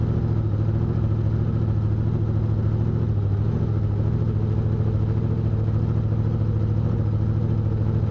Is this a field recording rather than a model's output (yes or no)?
yes